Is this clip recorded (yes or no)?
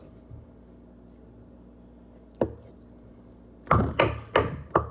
yes